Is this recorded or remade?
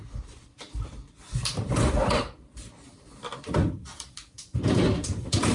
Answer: remade